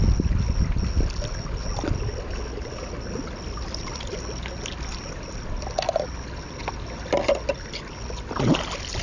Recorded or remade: recorded